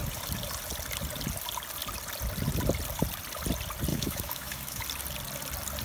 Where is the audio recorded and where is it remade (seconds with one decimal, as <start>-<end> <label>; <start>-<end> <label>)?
0.0-3.9 recorded; 3.9-4.8 remade; 4.8-5.8 recorded